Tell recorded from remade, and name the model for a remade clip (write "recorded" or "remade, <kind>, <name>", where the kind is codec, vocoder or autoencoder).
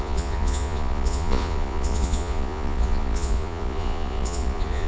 remade, vocoder, Vocos